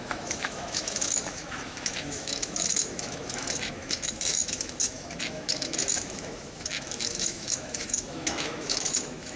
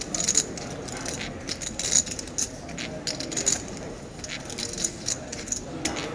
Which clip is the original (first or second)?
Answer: second